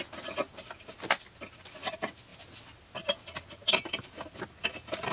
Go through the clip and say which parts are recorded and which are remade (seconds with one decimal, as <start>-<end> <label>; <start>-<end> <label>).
0.0-5.1 recorded